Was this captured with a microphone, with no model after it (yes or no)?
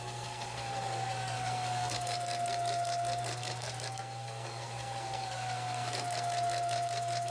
no